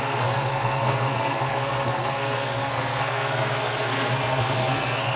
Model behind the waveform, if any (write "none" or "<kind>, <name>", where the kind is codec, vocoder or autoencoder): codec, SNAC